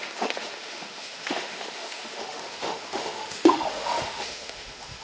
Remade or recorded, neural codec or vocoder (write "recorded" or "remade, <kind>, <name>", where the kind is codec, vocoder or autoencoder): remade, autoencoder, DAC-VAE